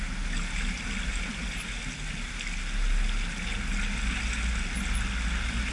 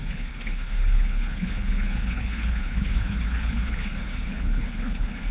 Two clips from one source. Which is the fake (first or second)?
second